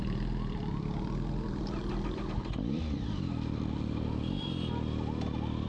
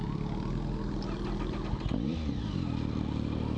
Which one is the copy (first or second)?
first